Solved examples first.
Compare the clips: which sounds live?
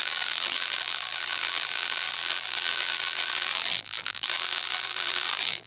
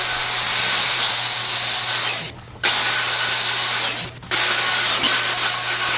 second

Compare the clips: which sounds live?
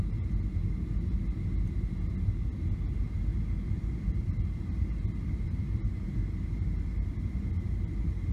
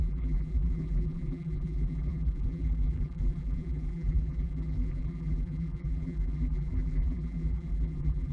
first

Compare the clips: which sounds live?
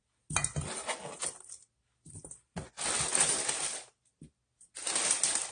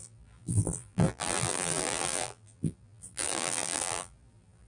first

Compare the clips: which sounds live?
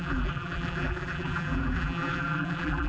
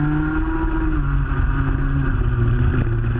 second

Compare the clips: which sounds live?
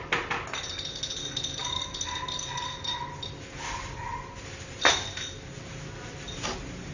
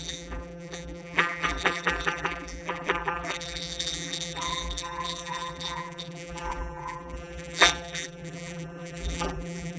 first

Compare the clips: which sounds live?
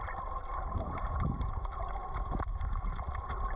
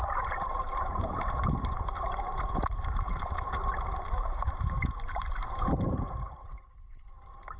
first